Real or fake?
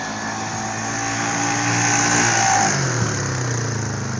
real